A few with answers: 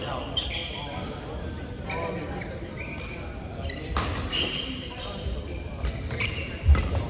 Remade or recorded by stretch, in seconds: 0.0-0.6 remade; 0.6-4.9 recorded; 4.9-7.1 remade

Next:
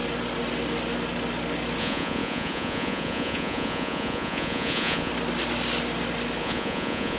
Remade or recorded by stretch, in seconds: 0.0-1.8 recorded; 1.8-5.1 remade; 5.1-6.4 recorded; 6.4-7.2 remade

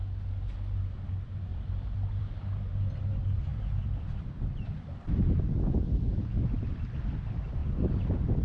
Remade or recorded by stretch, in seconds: 0.0-1.5 recorded; 1.5-2.2 remade; 2.2-3.5 recorded; 3.5-5.8 remade; 5.8-7.6 recorded; 7.6-8.4 remade

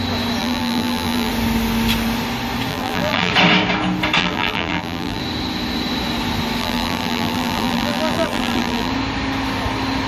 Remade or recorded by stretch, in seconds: 0.0-0.4 recorded; 0.4-1.3 remade; 1.3-2.7 recorded; 2.7-3.3 remade; 3.3-4.2 recorded; 4.2-5.2 remade; 5.2-6.6 recorded; 6.6-8.9 remade; 8.9-10.1 recorded